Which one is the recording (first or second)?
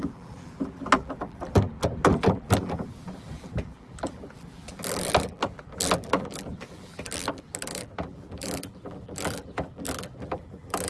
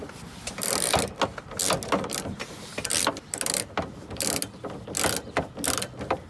second